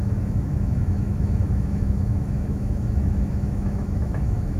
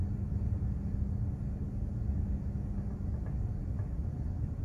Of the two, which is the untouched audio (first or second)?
second